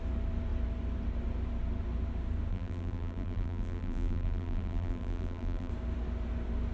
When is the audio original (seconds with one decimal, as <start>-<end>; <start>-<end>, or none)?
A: 0.0-2.5; 5.7-6.7